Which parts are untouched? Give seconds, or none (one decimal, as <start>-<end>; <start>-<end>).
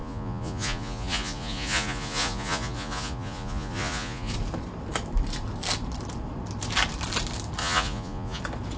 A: 4.3-7.6; 8.4-8.8